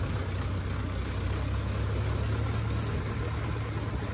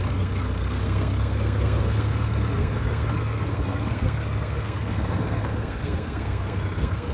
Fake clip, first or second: second